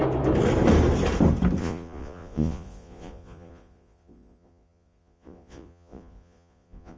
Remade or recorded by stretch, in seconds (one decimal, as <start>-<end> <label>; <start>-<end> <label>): 0.0-1.6 recorded; 1.6-7.0 remade